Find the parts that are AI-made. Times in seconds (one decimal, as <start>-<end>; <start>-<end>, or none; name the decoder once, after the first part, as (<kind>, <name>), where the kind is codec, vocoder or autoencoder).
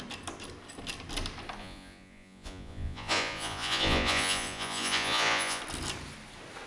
1.6-5.6 (vocoder, Vocos)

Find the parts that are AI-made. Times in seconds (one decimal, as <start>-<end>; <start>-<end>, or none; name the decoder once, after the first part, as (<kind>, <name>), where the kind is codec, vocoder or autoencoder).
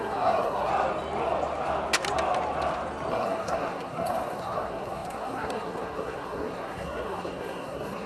0.0-0.7 (codec, SNAC); 3.1-8.1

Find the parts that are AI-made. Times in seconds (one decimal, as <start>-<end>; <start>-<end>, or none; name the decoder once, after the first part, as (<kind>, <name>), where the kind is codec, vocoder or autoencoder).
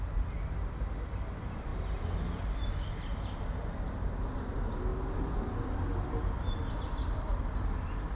none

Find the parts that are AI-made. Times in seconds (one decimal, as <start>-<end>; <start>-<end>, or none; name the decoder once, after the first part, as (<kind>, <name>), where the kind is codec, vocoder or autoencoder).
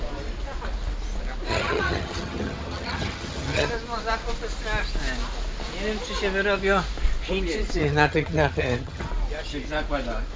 1.5-3.7 (vocoder, HiFi-GAN); 7.8-9.1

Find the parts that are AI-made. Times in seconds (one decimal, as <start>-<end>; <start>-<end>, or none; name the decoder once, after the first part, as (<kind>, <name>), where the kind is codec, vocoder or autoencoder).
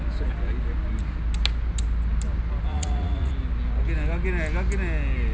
2.7-3.3 (vocoder, Vocos)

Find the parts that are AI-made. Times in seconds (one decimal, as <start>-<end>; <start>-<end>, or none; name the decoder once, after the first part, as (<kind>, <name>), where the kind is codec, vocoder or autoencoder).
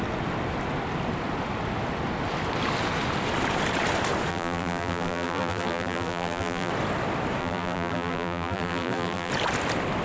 4.3-6.7 (vocoder, BigVGAN v2); 7.4-9.3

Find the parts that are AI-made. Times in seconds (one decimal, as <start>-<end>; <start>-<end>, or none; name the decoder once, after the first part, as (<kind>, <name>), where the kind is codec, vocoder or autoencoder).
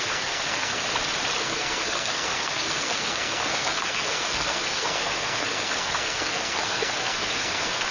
0.0-0.8 (codec, SNAC); 1.4-7.9